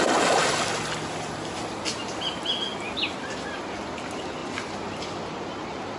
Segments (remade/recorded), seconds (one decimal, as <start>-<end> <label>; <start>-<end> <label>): 0.0-6.0 recorded

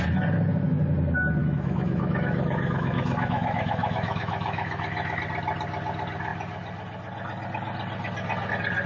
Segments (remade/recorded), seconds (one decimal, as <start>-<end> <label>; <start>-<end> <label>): 0.0-1.4 recorded; 1.4-5.2 remade; 5.2-8.9 recorded

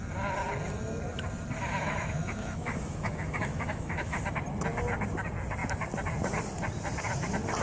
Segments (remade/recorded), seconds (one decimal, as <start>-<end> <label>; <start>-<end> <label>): 0.0-1.6 recorded; 1.6-4.2 remade; 4.2-7.6 recorded

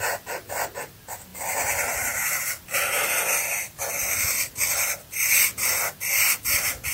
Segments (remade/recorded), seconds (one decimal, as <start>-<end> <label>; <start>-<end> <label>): 0.0-6.9 recorded

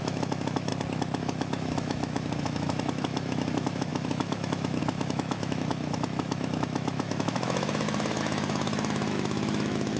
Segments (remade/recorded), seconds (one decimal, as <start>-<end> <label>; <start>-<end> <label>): 0.0-0.7 remade; 0.7-1.2 recorded; 1.2-10.0 remade

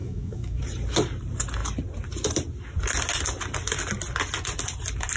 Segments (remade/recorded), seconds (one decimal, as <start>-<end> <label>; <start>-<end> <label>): 0.0-0.6 remade; 0.6-5.2 recorded

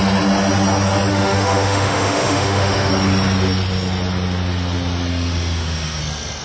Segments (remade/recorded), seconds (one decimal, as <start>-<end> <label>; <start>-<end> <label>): 0.0-1.1 recorded; 1.1-2.9 remade; 2.9-5.1 recorded; 5.1-6.0 remade; 6.0-6.4 recorded